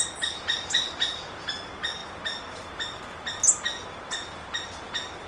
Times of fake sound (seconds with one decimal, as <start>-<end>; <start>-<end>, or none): none